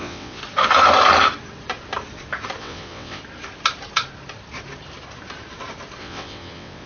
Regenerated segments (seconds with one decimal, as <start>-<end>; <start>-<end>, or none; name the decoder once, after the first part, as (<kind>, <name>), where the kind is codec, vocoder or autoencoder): 0.0-0.4 (vocoder, WaveNeXt); 2.6-3.2; 6.0-6.9